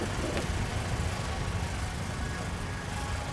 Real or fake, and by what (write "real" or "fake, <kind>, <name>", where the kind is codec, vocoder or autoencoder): real